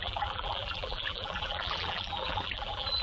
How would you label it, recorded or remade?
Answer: remade